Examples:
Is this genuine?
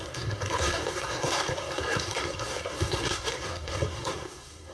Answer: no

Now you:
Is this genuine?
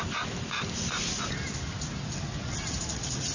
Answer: yes